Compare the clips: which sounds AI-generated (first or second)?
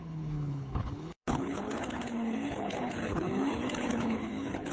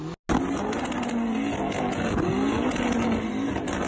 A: first